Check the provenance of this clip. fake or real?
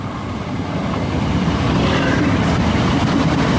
real